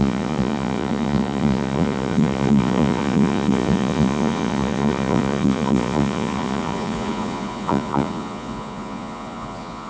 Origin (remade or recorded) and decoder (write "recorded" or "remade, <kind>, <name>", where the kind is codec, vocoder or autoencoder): remade, vocoder, Vocos